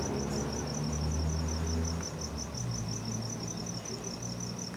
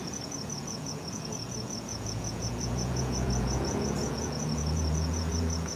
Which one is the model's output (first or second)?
second